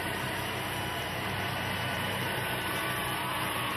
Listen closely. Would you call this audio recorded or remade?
remade